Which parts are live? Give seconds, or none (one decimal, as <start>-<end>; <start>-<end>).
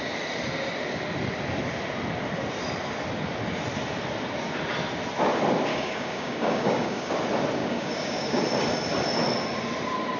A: 0.0-5.7; 7.1-7.6; 8.4-10.2